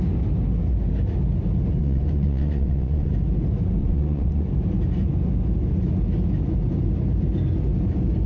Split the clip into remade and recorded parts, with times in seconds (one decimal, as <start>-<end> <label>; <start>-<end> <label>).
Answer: 0.0-1.8 recorded; 1.8-3.1 remade; 3.1-3.8 recorded; 3.8-4.5 remade; 4.5-8.3 recorded